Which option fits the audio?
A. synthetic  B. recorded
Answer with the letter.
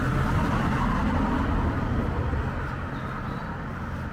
B